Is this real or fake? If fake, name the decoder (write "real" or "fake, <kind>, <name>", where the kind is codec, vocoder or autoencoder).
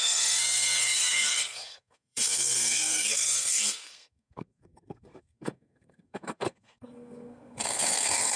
fake, codec, SNAC